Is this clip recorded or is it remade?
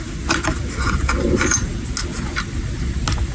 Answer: recorded